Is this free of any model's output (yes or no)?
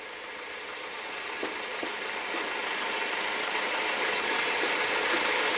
yes